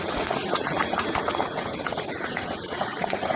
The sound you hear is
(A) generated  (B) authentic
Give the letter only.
A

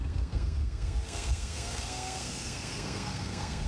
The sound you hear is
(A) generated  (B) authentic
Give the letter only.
A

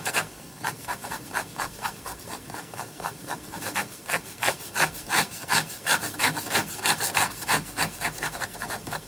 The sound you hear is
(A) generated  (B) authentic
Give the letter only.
A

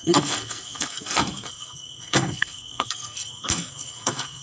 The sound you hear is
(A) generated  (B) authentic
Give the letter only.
A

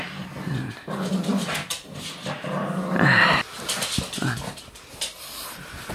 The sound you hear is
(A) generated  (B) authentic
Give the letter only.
B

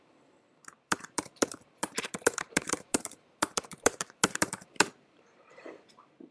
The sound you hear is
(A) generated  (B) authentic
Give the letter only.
A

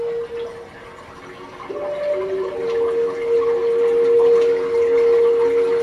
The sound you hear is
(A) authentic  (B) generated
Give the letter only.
A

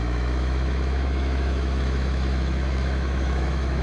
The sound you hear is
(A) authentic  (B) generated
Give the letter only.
B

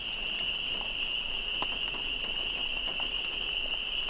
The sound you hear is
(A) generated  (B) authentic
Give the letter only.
B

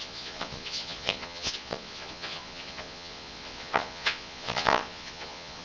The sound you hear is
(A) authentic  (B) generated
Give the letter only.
B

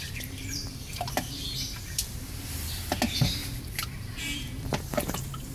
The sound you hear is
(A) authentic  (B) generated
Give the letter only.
B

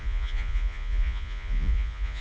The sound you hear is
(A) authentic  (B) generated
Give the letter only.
B